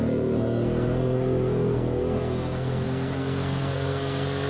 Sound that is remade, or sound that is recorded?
remade